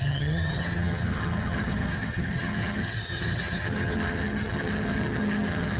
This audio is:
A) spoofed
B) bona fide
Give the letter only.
A